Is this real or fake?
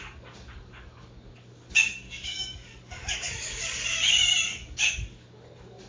fake